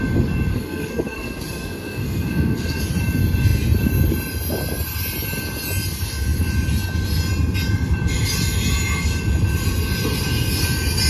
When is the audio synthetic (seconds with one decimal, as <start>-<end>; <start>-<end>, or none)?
0.5-2.8

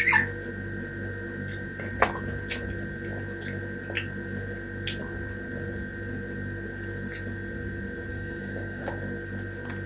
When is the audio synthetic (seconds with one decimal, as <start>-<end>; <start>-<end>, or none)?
8.1-8.9

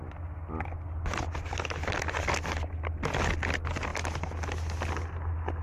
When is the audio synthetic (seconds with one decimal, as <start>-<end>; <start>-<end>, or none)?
none

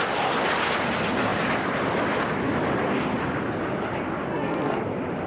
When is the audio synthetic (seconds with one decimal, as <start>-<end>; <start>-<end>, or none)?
4.3-4.8

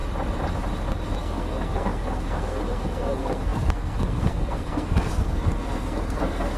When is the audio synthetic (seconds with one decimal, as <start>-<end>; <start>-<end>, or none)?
1.2-6.6

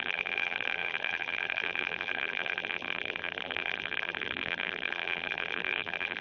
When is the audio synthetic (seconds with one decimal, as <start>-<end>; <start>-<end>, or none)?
0.0-6.2

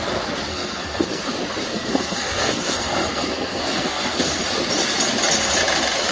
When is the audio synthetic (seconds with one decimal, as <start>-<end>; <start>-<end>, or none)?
0.5-1.2; 1.7-4.4